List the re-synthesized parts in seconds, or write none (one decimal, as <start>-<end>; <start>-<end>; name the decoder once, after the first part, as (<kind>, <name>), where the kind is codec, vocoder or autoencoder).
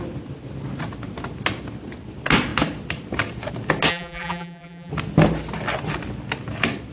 3.9-4.9 (vocoder, BigVGAN v2)